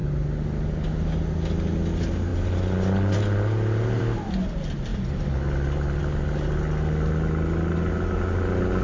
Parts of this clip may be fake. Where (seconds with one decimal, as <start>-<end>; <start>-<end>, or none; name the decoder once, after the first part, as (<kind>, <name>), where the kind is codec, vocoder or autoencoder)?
none